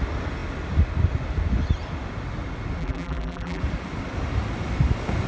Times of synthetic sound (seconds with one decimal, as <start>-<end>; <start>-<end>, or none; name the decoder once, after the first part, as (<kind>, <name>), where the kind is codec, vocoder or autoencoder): 2.8-3.6 (vocoder, BigVGAN v2)